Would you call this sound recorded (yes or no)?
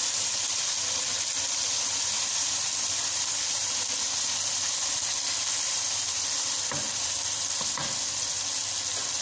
yes